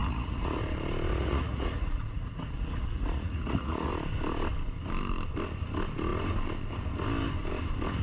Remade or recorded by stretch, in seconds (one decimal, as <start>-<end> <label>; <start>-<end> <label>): 0.0-0.6 remade; 0.6-1.1 recorded; 1.1-3.9 remade; 3.9-8.0 recorded